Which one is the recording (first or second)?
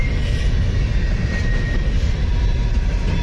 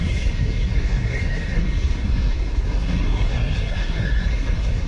first